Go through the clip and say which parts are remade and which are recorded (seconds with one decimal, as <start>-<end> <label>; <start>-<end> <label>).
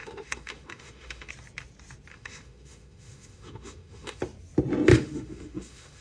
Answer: 0.0-1.3 remade; 1.3-2.1 recorded; 2.1-4.2 remade; 4.2-4.9 recorded; 4.9-6.0 remade